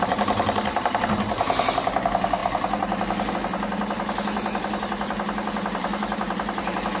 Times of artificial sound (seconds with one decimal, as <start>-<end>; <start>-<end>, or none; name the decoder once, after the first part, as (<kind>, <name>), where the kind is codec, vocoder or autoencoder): none